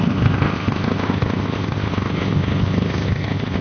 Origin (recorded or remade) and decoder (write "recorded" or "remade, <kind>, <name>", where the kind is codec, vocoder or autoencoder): remade, codec, ZipCodec